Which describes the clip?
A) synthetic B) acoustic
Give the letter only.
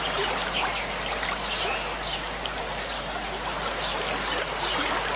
B